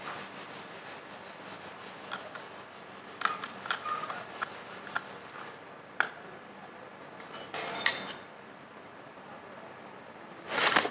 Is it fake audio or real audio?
real